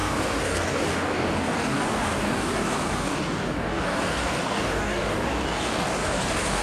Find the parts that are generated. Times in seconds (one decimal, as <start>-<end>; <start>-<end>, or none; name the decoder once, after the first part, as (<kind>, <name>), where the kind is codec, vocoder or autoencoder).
0.0-6.6 (codec, DAC)